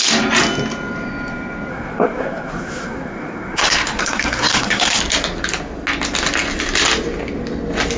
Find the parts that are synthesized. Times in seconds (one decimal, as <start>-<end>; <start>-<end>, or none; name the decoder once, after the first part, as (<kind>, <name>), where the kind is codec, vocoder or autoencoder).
1.7-5.0 (codec, SNAC)